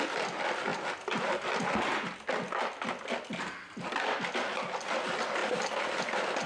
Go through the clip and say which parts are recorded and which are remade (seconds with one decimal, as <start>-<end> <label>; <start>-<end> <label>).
0.0-5.4 recorded; 5.4-6.0 remade; 6.0-6.5 recorded